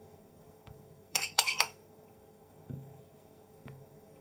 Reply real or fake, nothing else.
fake